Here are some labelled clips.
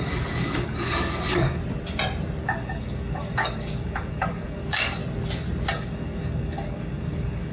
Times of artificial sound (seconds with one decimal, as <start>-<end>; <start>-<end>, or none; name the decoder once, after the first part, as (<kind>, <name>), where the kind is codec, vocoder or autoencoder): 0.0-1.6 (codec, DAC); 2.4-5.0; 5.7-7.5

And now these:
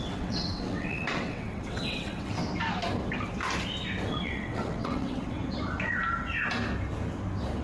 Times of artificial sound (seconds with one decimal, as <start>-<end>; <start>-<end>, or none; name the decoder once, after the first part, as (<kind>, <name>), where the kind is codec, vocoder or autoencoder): 0.0-2.4 (vocoder, WaveNeXt); 4.1-5.4

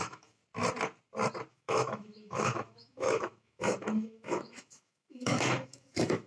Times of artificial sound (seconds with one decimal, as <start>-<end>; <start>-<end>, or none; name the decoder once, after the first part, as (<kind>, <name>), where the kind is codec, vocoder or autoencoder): 0.0-0.4 (autoencoder, DAC-VAE); 1.5-6.3

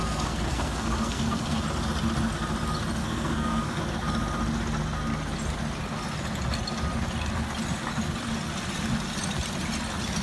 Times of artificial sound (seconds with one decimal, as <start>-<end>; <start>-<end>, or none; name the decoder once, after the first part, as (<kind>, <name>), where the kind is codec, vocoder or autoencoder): 0.0-1.6 (codec, SNAC); 3.0-3.8